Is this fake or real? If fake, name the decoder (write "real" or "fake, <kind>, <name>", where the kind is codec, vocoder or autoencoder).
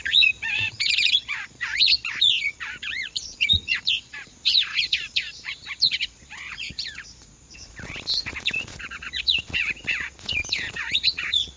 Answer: fake, vocoder, Vocos